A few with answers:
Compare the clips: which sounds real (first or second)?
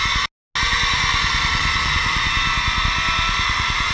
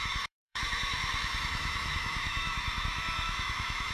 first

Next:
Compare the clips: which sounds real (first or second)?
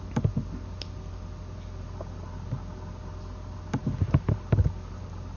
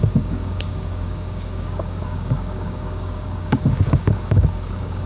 first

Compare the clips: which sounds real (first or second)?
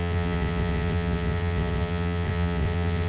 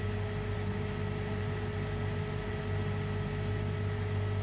second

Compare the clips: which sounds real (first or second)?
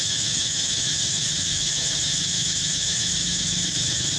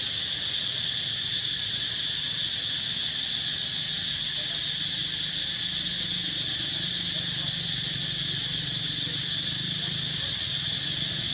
second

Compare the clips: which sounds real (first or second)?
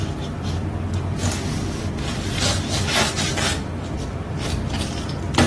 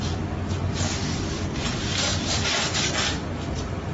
first